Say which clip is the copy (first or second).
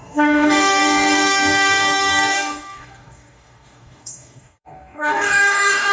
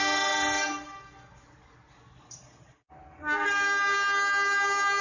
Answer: first